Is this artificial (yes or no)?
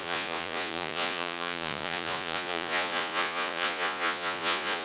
yes